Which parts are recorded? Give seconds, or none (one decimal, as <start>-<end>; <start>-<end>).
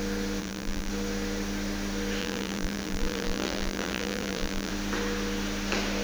0.0-0.4; 0.9-2.2; 4.7-6.0